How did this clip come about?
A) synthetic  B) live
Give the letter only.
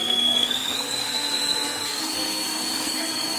A